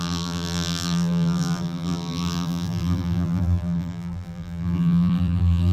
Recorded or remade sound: remade